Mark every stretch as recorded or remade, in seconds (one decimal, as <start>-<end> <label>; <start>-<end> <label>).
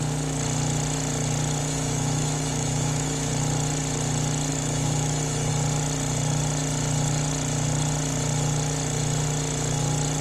0.0-1.6 recorded; 1.6-3.3 remade; 3.3-4.5 recorded; 4.5-5.5 remade; 5.5-10.2 recorded